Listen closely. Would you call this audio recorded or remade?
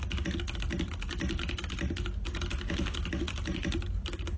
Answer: recorded